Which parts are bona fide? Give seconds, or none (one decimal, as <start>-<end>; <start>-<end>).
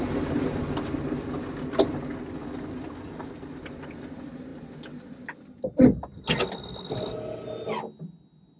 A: 0.0-8.6